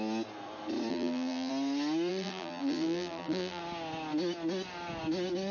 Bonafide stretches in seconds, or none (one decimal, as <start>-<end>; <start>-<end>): 0.0-0.9; 1.5-2.1; 3.6-5.5